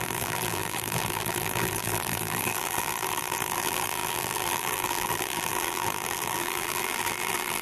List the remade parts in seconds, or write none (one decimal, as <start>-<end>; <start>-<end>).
0.0-7.6